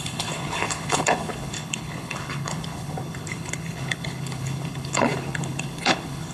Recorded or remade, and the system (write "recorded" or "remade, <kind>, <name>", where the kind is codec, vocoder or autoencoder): remade, codec, HILCodec